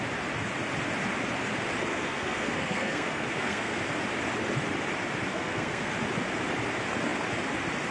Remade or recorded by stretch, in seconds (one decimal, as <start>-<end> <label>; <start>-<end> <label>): 0.0-1.9 recorded; 1.9-3.8 remade; 3.8-5.3 recorded; 5.3-5.9 remade; 5.9-7.9 recorded